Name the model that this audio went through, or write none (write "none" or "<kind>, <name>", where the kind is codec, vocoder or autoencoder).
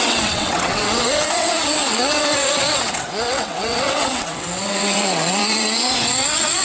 vocoder, WaveNeXt